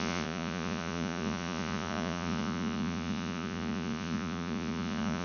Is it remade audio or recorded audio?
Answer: remade